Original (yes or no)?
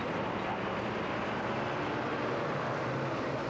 yes